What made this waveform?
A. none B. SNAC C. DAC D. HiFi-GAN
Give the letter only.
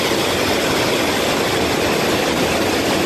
A